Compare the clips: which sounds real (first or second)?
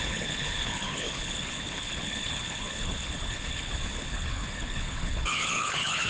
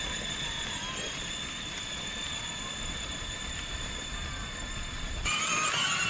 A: second